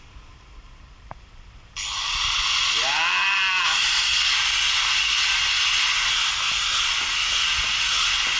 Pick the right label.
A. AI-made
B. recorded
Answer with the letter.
B